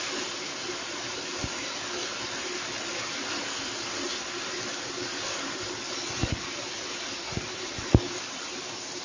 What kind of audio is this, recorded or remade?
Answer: recorded